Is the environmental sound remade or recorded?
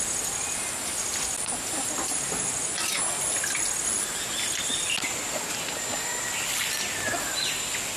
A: recorded